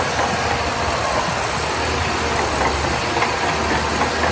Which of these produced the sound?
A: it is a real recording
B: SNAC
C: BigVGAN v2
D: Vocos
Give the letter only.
A